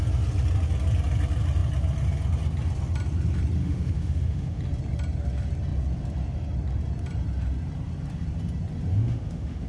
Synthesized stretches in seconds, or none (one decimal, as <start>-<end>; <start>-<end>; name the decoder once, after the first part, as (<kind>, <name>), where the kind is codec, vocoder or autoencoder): 3.6-4.6 (autoencoder, DAC-VAE); 8.9-9.7